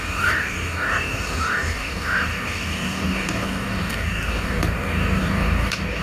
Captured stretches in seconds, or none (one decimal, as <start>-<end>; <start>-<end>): none